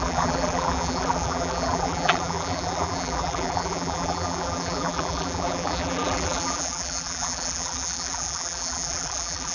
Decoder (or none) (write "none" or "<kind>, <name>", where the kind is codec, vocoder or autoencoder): vocoder, BigVGAN v2